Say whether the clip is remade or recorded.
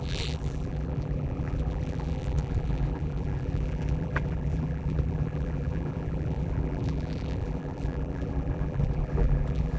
remade